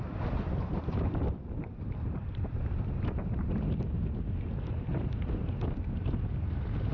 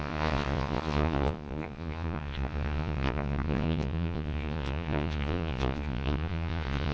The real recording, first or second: first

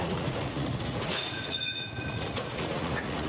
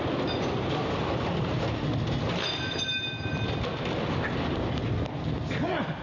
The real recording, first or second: second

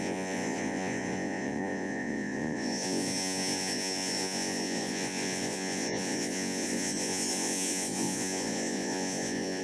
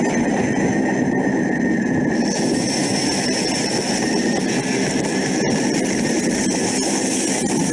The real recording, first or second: second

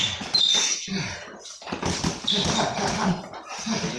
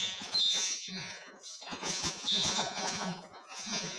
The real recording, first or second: first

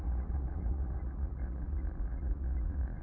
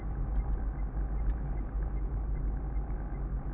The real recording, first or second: second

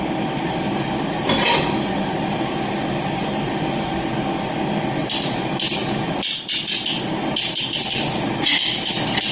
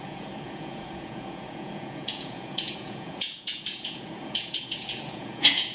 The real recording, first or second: first